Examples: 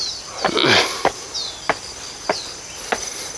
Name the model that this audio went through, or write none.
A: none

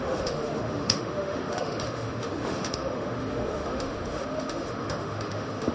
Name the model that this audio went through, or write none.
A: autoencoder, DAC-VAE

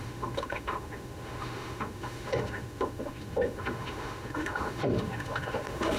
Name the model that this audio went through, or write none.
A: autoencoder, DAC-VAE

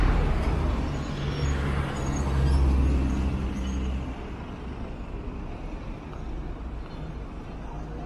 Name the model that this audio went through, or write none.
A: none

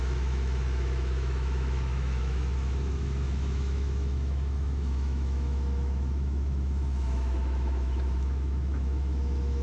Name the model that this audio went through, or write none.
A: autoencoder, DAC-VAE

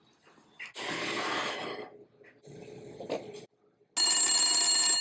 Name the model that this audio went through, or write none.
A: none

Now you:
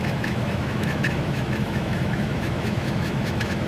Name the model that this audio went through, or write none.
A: autoencoder, DAC-VAE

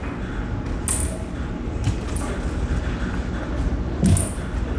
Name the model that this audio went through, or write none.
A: none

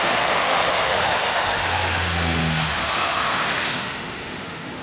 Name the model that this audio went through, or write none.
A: autoencoder, DAC-VAE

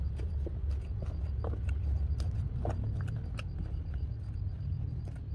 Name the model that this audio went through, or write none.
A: none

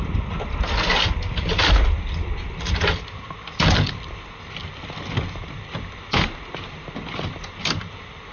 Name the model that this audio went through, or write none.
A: none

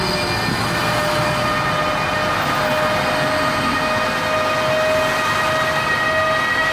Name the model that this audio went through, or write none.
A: none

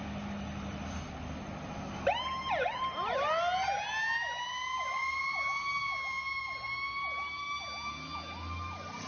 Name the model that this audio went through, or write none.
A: none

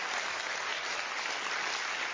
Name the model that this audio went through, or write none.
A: none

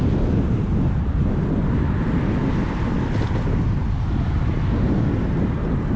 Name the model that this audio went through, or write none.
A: none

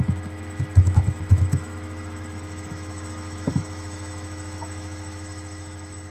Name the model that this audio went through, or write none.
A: autoencoder, DAC-VAE